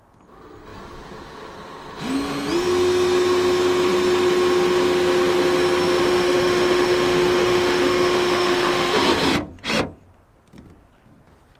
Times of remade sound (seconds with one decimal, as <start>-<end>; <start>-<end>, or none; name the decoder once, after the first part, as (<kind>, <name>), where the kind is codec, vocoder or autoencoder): 6.0-9.0 (autoencoder, DAC-VAE)